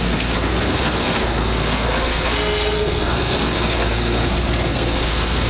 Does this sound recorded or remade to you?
remade